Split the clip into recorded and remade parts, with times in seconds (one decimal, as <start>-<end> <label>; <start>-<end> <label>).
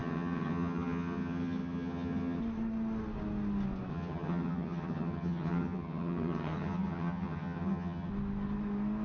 0.0-2.4 remade; 2.4-3.9 recorded; 3.9-8.1 remade; 8.1-9.0 recorded